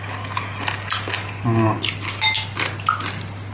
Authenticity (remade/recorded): recorded